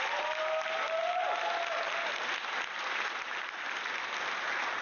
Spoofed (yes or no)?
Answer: no